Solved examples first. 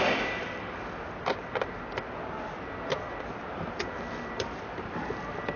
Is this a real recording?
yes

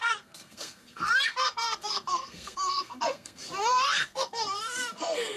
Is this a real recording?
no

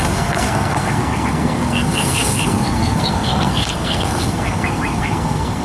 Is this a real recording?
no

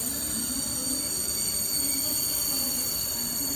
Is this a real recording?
yes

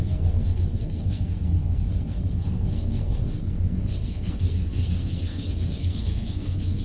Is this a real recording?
no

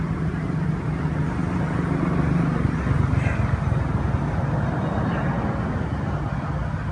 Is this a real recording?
yes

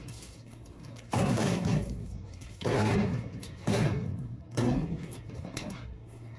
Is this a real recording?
no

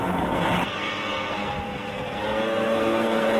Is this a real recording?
no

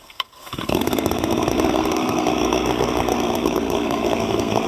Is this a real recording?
no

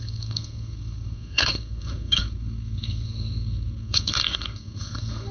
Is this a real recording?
no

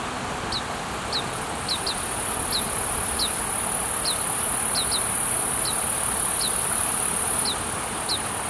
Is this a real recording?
yes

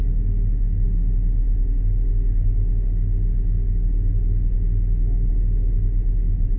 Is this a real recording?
yes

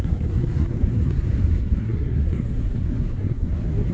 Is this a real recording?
no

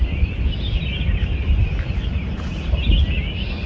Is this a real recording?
yes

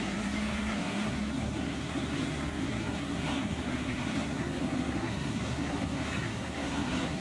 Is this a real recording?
no